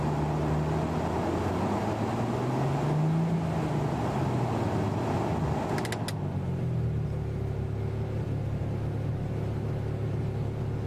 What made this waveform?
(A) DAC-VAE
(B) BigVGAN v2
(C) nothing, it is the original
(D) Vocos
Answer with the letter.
C